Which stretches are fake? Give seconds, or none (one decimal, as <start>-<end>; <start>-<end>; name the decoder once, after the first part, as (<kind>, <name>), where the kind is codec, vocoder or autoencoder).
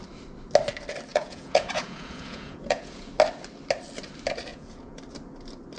1.1-3.1 (vocoder, Vocos); 4.5-5.0